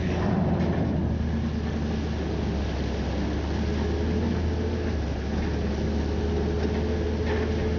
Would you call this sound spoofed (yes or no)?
no